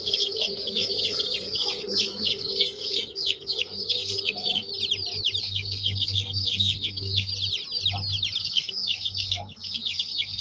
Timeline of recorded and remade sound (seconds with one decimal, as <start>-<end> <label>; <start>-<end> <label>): 0.0-4.7 remade; 4.7-5.4 recorded; 5.4-7.3 remade; 7.3-8.4 recorded; 8.4-10.4 remade